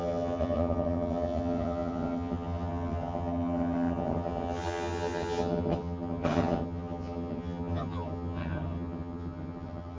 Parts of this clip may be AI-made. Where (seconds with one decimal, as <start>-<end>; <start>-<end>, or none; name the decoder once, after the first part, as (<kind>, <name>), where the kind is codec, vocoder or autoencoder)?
0.0-10.0 (vocoder, HiFi-GAN)